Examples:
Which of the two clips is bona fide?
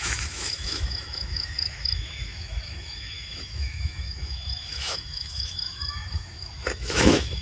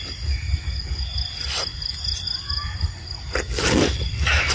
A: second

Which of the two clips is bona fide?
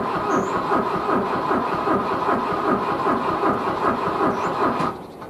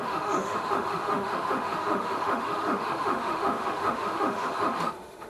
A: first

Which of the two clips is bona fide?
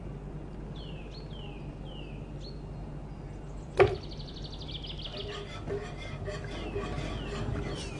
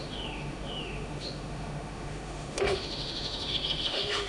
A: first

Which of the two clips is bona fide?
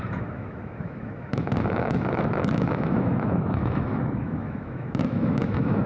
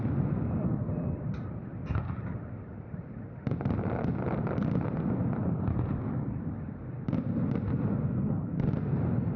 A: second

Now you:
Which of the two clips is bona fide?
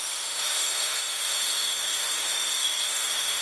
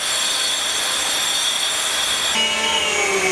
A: second